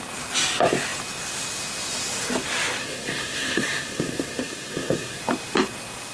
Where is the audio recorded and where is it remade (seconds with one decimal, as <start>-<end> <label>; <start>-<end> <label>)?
0.0-2.8 recorded; 2.8-5.2 remade; 5.2-6.1 recorded